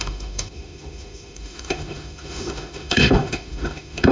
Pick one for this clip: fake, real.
fake